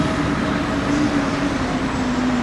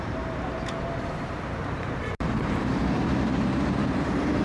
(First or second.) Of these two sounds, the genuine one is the first